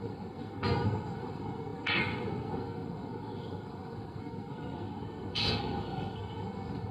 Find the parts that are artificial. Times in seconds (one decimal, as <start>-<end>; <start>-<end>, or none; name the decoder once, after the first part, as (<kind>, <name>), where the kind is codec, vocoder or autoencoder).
0.0-6.9 (codec, SNAC)

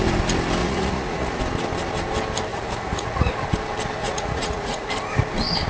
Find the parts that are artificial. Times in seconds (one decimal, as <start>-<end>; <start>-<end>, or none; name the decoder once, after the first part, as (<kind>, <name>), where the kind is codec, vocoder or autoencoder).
0.6-1.4 (vocoder, Vocos); 2.5-3.3; 4.0-4.9